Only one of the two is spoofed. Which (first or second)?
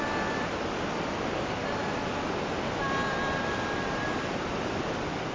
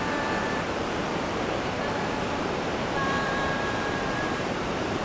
second